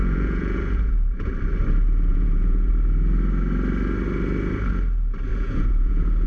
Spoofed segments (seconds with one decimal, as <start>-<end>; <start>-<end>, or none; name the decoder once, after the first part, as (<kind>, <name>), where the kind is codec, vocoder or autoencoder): 0.0-1.3 (vocoder, Vocos); 2.1-2.7; 5.3-6.3